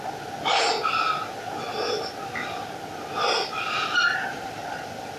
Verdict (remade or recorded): recorded